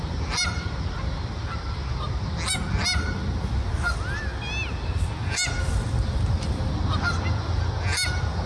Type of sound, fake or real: real